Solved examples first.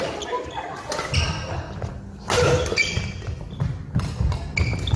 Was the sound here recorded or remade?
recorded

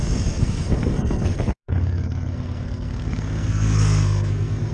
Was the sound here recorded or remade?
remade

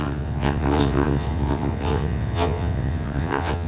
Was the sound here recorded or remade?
remade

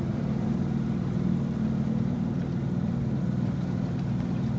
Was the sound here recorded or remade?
recorded